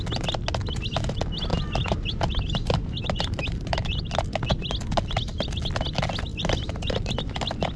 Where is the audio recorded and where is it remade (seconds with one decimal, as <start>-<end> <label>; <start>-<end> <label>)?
0.0-1.5 recorded; 1.5-4.0 remade; 4.0-6.3 recorded; 6.3-7.2 remade; 7.2-7.8 recorded